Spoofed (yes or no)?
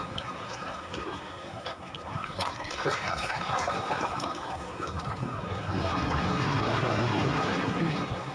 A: yes